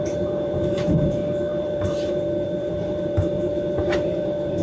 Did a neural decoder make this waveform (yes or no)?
yes